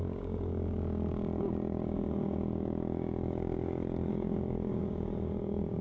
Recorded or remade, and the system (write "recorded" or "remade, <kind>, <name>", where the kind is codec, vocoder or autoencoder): remade, codec, DAC